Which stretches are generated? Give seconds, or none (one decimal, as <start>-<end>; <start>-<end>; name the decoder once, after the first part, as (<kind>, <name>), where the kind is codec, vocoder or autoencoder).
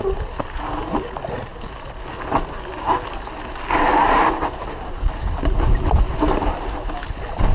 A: none